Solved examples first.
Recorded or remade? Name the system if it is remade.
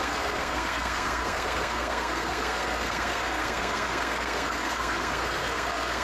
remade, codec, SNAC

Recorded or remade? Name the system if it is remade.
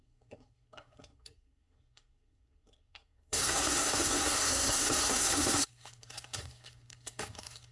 remade, codec, SNAC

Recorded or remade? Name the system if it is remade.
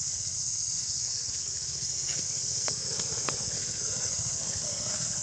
remade, codec, SNAC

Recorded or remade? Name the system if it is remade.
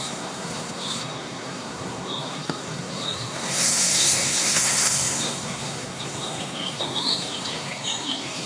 remade, codec, SNAC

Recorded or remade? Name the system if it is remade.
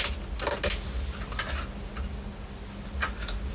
recorded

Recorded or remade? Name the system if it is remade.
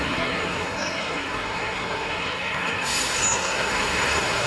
remade, codec, SNAC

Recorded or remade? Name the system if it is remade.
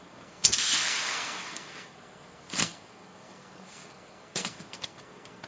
remade, codec, SNAC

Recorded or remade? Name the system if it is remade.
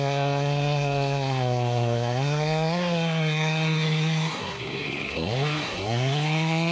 remade, codec, SNAC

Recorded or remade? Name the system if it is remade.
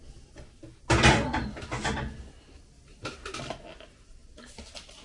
recorded